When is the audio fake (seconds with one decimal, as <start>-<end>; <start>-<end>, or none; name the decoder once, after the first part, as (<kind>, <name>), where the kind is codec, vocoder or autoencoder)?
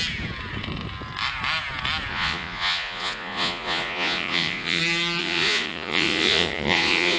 2.1-4.8 (vocoder, Vocos); 5.2-7.2